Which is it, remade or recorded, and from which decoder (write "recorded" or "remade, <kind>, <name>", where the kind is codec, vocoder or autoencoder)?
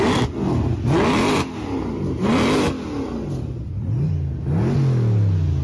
recorded